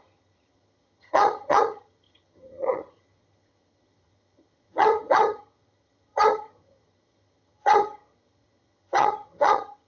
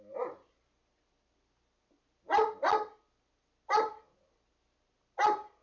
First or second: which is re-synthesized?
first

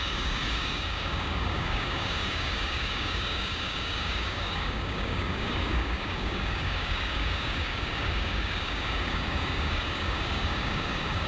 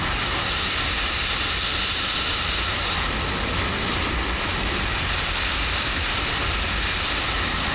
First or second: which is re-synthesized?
first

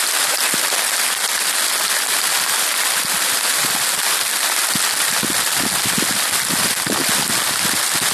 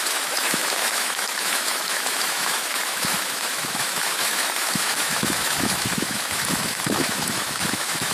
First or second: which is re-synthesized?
second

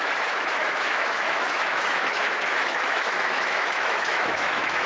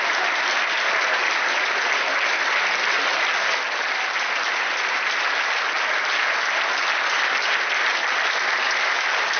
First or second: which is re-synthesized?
first